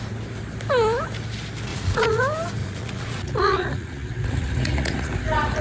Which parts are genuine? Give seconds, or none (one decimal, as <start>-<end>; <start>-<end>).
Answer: 0.0-1.7; 2.2-2.6; 5.1-5.6

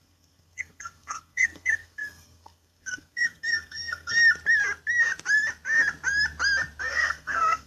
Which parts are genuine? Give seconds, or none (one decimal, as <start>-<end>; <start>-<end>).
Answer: 4.2-6.9

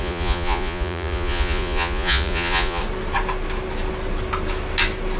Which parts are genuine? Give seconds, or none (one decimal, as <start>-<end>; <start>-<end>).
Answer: 2.8-5.2

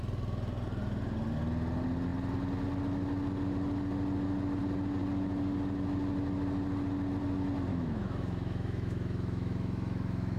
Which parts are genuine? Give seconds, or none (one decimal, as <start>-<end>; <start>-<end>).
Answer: 0.0-7.7

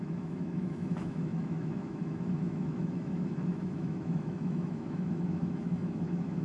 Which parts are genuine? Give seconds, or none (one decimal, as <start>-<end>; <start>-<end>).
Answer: none

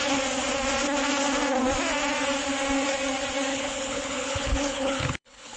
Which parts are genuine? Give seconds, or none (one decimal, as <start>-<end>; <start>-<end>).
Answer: 0.0-3.5

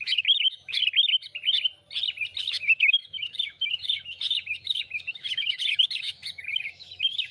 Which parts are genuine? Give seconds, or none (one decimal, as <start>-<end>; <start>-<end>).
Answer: 0.8-2.4